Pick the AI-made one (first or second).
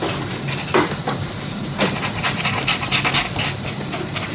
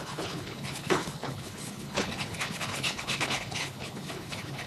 second